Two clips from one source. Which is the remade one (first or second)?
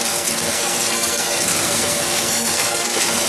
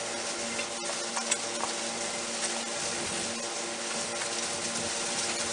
first